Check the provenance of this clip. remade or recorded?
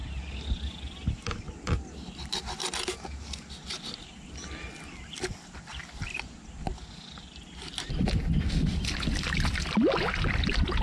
recorded